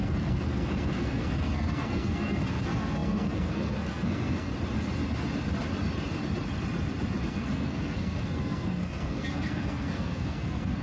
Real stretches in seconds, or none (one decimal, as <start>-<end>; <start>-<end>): 4.5-7.2